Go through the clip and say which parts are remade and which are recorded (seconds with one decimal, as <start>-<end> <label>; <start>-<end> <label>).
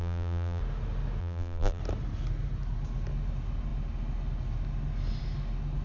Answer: 0.0-0.6 remade; 0.6-1.2 recorded; 1.2-1.8 remade; 1.8-5.8 recorded